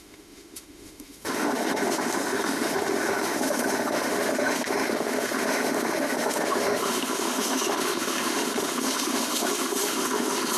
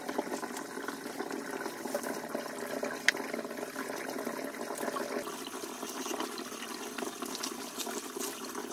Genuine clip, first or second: second